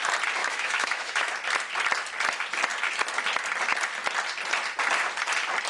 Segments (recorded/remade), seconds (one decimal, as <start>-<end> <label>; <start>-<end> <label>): 0.0-0.4 recorded; 0.4-1.3 remade; 1.3-5.7 recorded